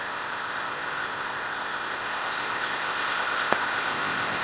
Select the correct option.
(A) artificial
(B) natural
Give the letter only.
A